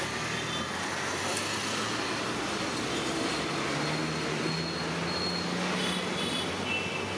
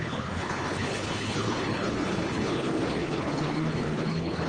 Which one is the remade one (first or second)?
second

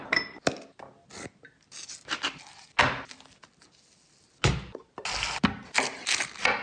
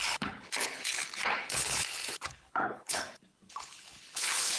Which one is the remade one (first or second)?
second